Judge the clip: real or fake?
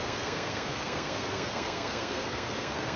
fake